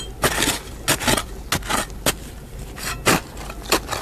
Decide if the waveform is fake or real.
real